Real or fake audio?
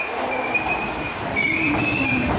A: real